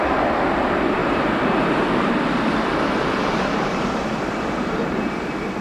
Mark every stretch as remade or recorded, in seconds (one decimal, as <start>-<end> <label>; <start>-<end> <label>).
0.0-5.6 remade